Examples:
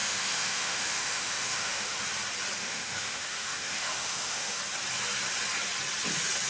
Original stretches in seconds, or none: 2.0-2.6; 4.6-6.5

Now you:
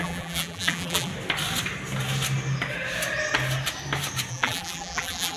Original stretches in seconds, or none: 1.1-4.3

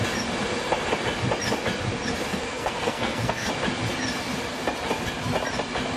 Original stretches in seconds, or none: 0.0-2.3; 3.5-6.0

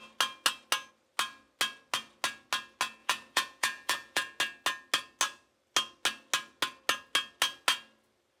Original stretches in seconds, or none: 0.0-3.0; 4.4-8.4

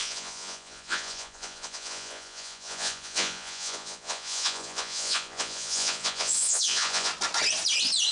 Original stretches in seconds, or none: 7.1-8.1